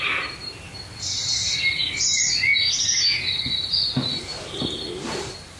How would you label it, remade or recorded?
recorded